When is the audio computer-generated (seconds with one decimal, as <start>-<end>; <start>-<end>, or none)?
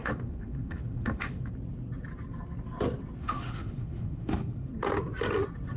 0.0-1.5; 3.2-4.7